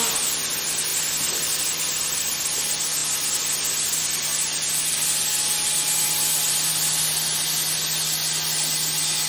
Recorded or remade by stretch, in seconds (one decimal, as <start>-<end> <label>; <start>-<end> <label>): 0.0-9.3 recorded